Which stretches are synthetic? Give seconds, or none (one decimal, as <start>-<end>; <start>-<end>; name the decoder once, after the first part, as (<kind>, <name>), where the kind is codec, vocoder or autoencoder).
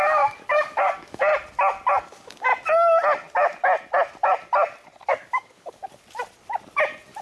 0.0-1.3 (codec, DAC); 2.0-2.5; 5.1-5.8